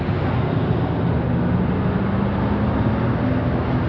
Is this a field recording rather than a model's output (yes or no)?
yes